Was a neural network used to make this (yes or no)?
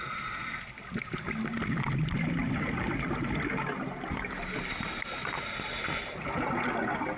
no